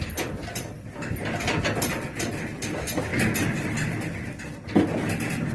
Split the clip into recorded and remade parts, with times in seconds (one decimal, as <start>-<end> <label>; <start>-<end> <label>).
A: 0.0-5.5 recorded